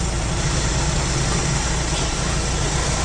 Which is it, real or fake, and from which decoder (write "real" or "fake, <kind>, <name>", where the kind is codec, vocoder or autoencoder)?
fake, vocoder, BigVGAN v2